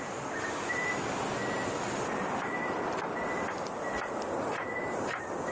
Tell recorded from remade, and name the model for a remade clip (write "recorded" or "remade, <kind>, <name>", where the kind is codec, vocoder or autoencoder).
recorded